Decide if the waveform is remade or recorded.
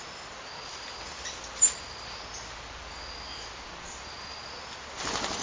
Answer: recorded